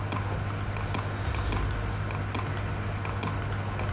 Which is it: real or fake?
real